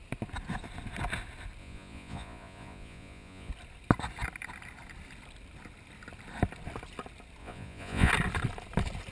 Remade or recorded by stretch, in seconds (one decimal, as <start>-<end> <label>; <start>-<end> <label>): 0.0-1.6 recorded; 1.6-3.5 remade; 3.5-7.4 recorded; 7.4-8.1 remade; 8.1-9.1 recorded